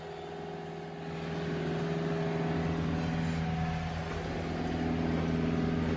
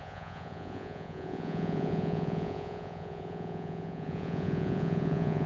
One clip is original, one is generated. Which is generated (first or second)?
second